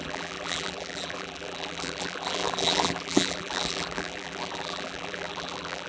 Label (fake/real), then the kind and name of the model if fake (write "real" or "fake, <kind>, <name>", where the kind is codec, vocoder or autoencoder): fake, vocoder, BigVGAN v2